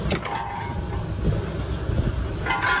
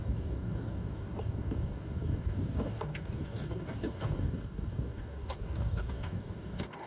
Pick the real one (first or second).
first